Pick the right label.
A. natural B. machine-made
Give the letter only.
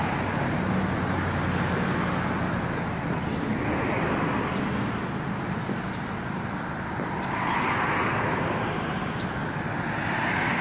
A